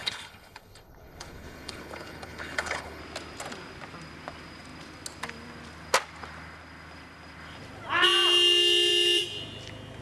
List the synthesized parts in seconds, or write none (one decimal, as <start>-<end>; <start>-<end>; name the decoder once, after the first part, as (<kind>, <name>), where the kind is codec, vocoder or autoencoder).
0.0-3.0 (codec, HILCodec)